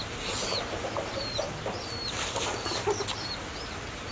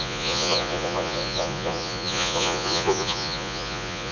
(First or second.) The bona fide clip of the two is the first